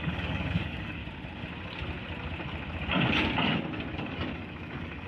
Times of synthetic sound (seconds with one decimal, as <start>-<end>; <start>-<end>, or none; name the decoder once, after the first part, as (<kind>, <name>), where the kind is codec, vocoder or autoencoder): 0.0-1.0 (codec, DAC); 4.0-5.1